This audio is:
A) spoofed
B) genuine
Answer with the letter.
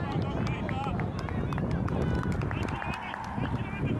B